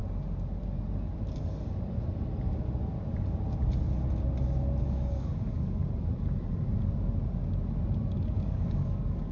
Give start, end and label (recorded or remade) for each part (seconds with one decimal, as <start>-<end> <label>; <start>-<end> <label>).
0.0-4.8 recorded; 4.8-5.8 remade; 5.8-8.1 recorded; 8.1-9.3 remade